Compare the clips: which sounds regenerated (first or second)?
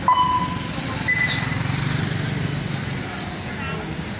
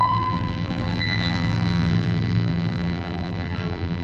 second